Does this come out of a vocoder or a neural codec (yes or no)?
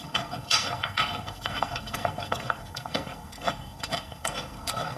yes